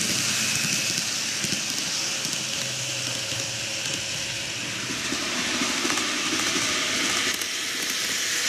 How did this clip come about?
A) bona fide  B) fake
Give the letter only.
A